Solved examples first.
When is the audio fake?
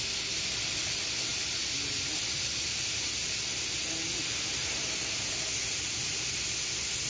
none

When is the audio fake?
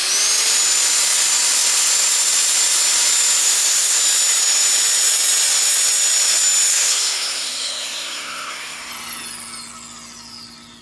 3.4-4.0 (codec, SNAC); 6.7-8.9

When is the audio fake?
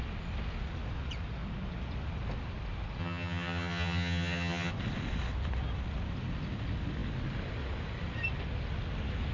3.0-4.7 (vocoder, HiFi-GAN)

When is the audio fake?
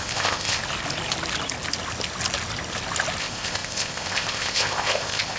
0.0-0.6 (codec, ZipCodec); 3.2-5.4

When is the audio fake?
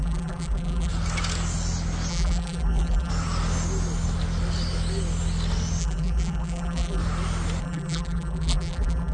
0.0-0.9 (vocoder, BigVGAN v2); 2.1-3.1; 5.8-7.0; 7.6-9.1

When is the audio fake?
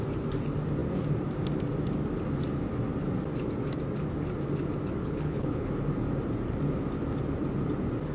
5.0-5.7 (codec, HILCodec)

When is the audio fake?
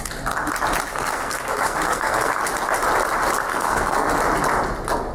0.9-2.4 (codec, SNAC); 3.5-4.1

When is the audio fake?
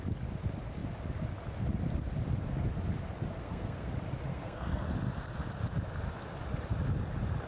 3.4-3.9 (codec, SNAC); 4.3-4.9